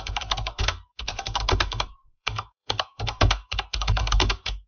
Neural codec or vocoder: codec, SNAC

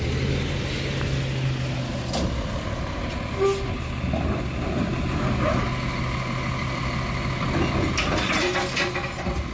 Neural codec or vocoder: none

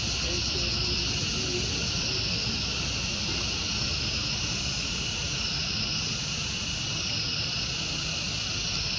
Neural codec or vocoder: none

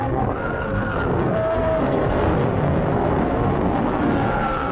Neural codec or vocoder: codec, SNAC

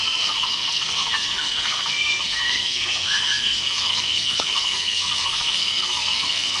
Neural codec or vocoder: codec, SNAC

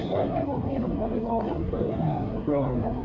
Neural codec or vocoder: codec, SNAC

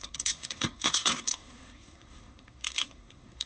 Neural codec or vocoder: codec, SNAC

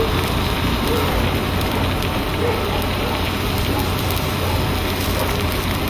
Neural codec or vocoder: none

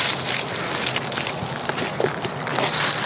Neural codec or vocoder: none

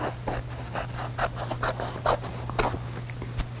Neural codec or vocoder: none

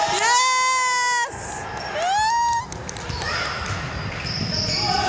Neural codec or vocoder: none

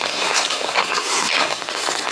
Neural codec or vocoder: codec, SNAC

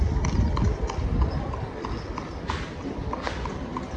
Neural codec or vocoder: none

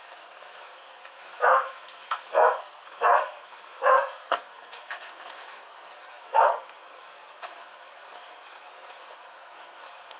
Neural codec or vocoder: codec, SNAC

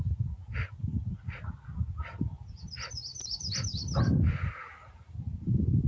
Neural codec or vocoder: none